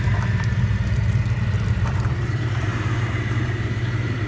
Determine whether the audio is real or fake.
fake